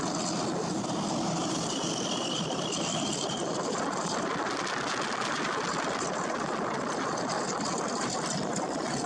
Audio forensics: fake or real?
real